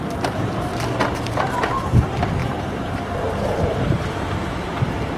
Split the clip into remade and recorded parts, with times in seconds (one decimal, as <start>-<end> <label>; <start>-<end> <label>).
0.0-0.7 remade; 0.7-1.3 recorded; 1.3-5.2 remade